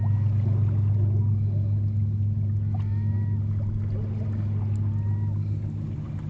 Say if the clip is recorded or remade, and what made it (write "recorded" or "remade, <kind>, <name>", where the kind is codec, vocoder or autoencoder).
recorded